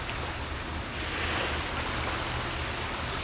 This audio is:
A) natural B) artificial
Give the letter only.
A